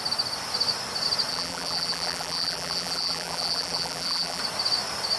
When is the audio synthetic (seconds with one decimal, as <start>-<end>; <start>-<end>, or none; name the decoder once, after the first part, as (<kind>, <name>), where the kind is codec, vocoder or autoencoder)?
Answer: 1.3-4.4 (vocoder, BigVGAN v2)